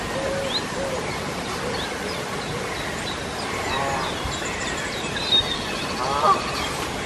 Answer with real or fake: real